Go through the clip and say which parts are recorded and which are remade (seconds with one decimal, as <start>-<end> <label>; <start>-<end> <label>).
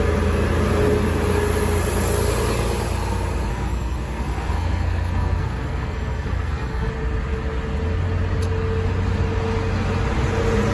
0.0-3.5 recorded; 3.5-6.9 remade; 6.9-10.7 recorded